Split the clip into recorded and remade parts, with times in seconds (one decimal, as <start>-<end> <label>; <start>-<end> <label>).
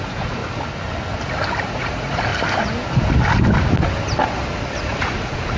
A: 0.0-0.4 remade; 0.4-1.7 recorded; 1.7-2.3 remade; 2.3-4.8 recorded; 4.8-5.6 remade